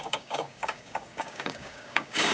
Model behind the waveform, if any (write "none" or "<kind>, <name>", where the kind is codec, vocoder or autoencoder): codec, DAC